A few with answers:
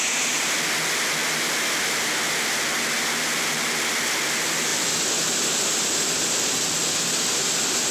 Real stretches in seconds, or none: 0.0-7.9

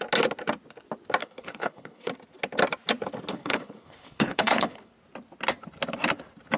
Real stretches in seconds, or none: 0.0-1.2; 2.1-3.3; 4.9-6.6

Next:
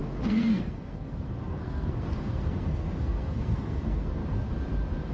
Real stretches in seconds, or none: 4.2-5.1

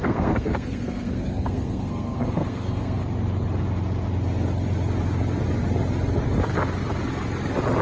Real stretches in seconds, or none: 3.0-7.8

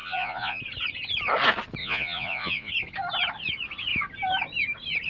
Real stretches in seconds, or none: 0.6-1.8; 2.7-5.1

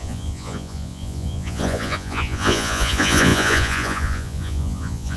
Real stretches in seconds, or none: none